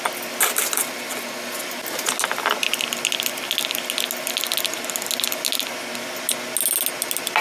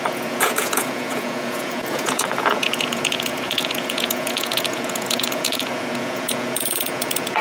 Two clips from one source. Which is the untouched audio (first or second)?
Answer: first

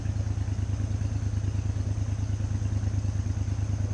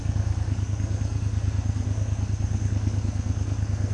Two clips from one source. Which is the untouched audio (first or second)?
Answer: first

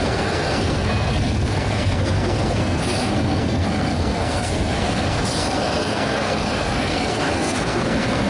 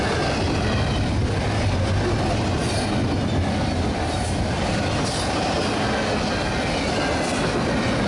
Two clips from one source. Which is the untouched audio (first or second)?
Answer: second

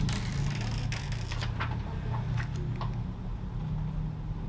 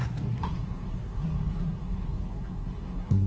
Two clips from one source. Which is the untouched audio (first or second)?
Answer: first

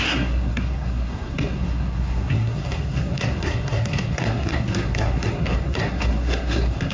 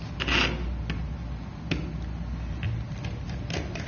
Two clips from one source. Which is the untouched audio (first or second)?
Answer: second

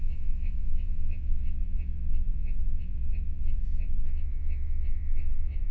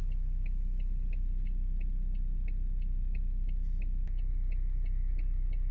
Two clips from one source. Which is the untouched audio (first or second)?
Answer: second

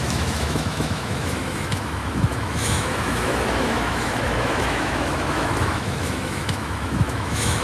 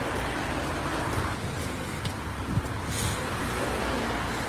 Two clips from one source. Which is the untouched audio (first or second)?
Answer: second